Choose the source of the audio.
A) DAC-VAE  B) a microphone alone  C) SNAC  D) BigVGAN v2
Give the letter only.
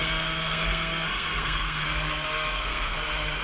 C